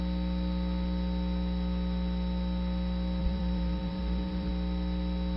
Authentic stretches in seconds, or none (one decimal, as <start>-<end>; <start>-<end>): 0.0-3.2; 4.5-5.4